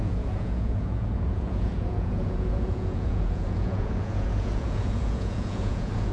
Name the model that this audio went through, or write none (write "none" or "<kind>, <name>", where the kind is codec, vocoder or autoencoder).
vocoder, Vocos